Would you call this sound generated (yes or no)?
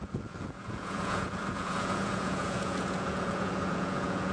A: yes